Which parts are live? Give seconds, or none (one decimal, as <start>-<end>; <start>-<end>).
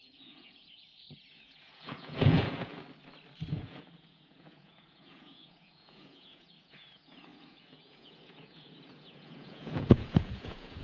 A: 2.7-3.5